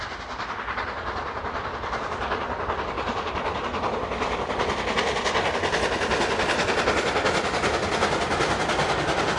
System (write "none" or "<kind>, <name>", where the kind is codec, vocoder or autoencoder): none